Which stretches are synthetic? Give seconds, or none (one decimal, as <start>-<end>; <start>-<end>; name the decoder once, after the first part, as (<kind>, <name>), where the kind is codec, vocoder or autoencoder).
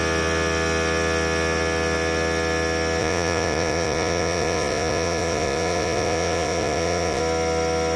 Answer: 3.0-7.2 (vocoder, Vocos)